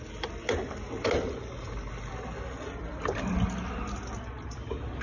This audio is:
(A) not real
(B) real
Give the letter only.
B